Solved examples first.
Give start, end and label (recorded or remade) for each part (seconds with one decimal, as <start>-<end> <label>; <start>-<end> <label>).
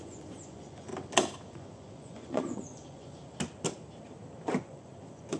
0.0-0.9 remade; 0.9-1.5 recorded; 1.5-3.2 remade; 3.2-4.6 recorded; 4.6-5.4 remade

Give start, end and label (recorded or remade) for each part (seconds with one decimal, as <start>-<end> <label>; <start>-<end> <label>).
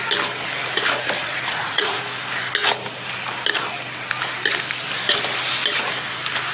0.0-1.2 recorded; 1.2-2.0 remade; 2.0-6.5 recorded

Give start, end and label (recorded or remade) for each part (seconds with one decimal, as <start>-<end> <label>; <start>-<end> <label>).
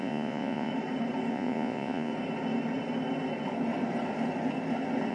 0.0-0.7 remade; 0.7-1.3 recorded; 1.3-2.1 remade; 2.1-5.1 recorded